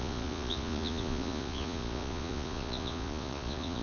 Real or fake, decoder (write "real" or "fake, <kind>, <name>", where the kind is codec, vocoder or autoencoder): fake, vocoder, Vocos